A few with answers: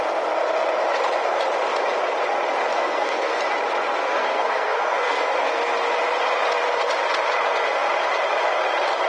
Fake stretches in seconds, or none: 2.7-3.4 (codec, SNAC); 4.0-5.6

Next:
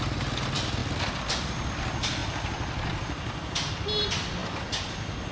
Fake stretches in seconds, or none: none

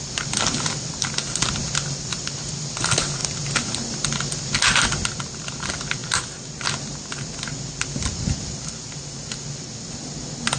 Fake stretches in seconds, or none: none

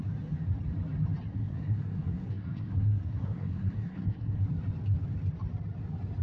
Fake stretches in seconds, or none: 1.3-4.4 (codec, SNAC)

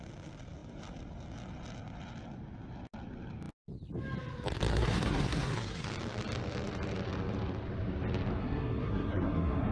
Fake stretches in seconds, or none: 4.7-5.9 (codec, SNAC); 8.4-9.7